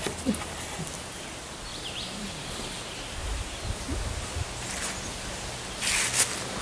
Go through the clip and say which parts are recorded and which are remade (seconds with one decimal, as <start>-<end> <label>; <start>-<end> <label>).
0.0-1.7 recorded; 1.7-2.5 remade; 2.5-3.2 recorded; 3.2-3.8 remade; 3.8-6.6 recorded